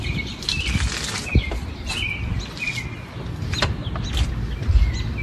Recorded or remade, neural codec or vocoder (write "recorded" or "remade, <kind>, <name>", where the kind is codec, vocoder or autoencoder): recorded